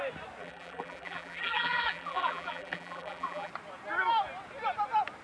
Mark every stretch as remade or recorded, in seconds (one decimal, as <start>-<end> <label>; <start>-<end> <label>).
0.0-0.4 recorded; 0.4-3.5 remade; 3.5-5.2 recorded